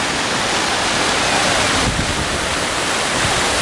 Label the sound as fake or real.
real